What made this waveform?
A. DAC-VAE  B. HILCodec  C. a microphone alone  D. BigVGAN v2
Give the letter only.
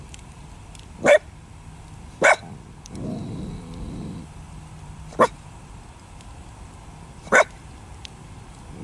D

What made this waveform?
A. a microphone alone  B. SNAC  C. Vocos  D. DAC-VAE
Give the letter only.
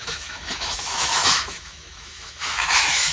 D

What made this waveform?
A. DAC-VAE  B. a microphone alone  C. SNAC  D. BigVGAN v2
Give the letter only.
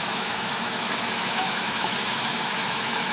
A